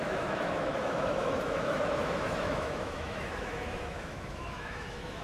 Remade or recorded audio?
remade